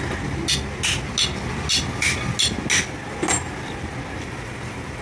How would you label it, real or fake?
real